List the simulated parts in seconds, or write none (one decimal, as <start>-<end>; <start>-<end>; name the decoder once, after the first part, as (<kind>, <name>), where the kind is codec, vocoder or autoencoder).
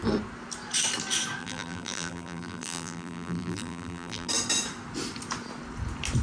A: 1.4-4.3 (vocoder, BigVGAN v2)